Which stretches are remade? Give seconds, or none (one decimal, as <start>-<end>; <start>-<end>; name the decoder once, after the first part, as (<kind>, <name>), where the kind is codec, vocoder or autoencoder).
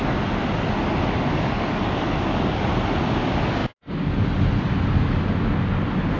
1.3-2.7 (codec, DAC)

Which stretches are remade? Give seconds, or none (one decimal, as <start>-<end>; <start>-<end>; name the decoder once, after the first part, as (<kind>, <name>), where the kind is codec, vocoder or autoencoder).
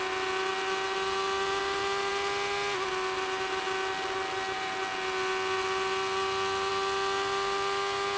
none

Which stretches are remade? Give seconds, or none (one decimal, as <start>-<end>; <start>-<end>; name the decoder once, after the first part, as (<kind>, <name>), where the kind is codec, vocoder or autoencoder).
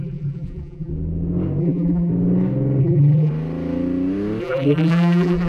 0.0-0.9 (vocoder, BigVGAN v2); 1.6-2.1; 2.8-3.3; 4.4-5.5